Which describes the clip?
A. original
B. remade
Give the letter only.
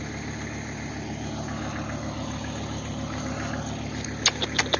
A